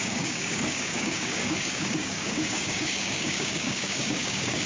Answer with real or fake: fake